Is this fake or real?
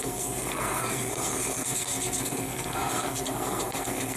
fake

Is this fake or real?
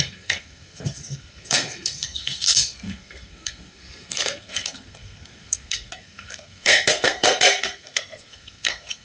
fake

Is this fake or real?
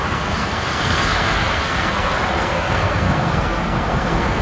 fake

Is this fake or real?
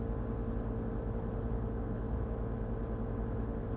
real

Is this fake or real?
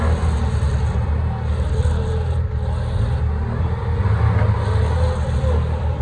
real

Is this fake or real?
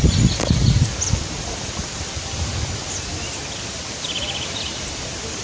real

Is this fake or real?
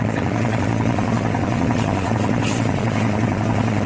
fake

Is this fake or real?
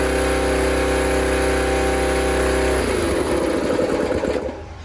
real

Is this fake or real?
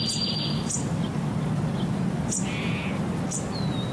real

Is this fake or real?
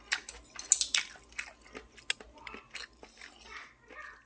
real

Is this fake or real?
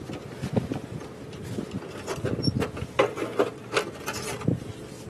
real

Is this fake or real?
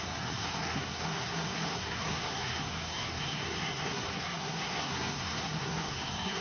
fake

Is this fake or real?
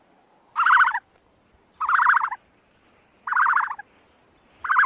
real